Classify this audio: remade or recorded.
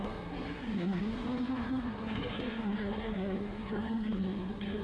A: remade